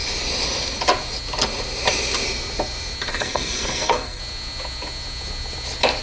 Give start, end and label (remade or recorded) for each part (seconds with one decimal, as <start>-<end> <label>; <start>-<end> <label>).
0.0-3.1 recorded; 3.1-4.2 remade; 4.2-6.0 recorded